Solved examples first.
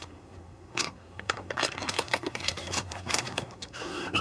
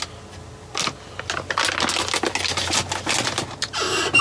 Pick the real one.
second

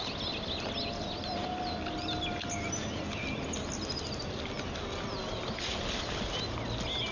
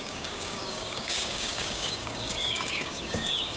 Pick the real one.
first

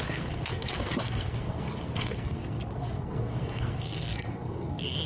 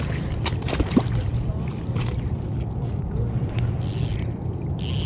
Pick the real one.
second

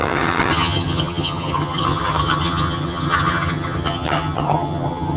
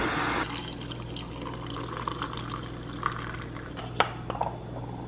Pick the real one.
second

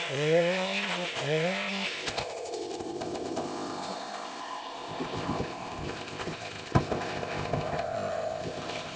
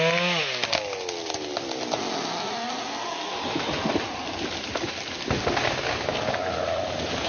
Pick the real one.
second